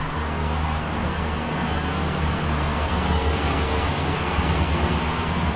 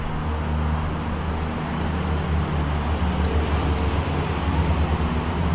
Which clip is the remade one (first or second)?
first